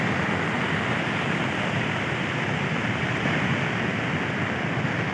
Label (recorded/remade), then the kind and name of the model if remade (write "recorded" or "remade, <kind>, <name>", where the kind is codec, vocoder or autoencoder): recorded